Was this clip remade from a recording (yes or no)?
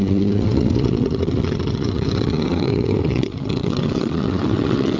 yes